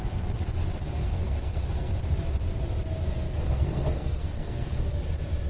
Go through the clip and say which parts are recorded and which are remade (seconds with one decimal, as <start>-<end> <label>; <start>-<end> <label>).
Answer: 0.0-1.0 recorded; 1.0-1.9 remade; 1.9-3.3 recorded; 3.3-4.8 remade; 4.8-5.5 recorded